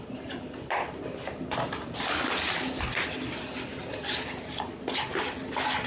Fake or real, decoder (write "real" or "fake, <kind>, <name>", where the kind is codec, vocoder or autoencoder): real